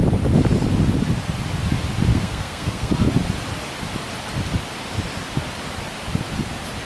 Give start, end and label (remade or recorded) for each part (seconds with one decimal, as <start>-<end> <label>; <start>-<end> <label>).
0.0-2.1 recorded; 2.1-2.9 remade; 2.9-6.8 recorded

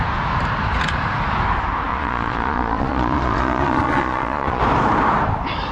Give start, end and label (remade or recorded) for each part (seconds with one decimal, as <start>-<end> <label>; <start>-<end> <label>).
0.0-1.9 recorded; 1.9-4.6 remade; 4.6-5.7 recorded

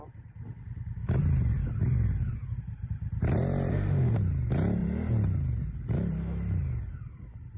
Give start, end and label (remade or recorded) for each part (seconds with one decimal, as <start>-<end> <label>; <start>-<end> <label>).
0.0-3.7 recorded; 3.7-4.2 remade; 4.2-7.6 recorded

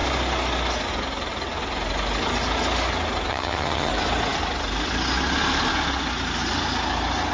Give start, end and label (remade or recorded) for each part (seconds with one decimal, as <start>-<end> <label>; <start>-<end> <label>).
0.0-3.3 recorded; 3.3-3.9 remade; 3.9-7.3 recorded